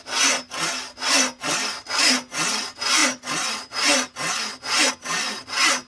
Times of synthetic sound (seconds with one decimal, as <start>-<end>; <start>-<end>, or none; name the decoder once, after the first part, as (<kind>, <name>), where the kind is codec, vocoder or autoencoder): none